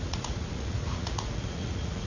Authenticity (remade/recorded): remade